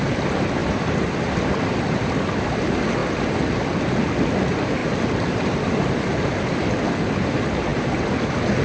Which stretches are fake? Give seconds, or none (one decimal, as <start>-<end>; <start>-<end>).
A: 0.6-1.9; 4.8-6.4; 7.7-8.2